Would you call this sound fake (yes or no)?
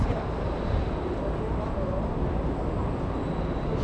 no